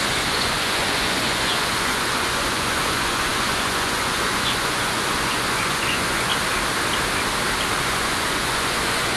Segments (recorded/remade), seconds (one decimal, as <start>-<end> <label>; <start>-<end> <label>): 0.0-6.3 remade; 6.3-7.8 recorded; 7.8-9.2 remade